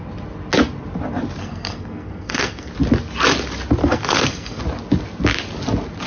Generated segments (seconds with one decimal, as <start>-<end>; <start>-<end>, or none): 1.4-2.7; 3.8-4.6